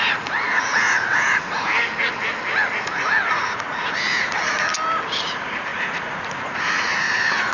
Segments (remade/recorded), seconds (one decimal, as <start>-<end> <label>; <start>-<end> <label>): 0.0-1.7 remade; 1.7-2.8 recorded; 2.8-4.7 remade; 4.7-5.2 recorded; 5.2-7.5 remade